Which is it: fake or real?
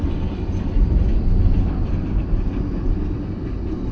real